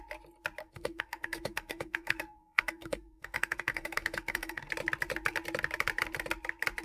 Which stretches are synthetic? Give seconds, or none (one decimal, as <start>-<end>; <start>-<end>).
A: 0.6-4.7